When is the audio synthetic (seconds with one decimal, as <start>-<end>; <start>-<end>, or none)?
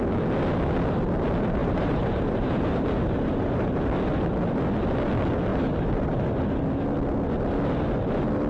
1.6-3.5; 5.5-6.4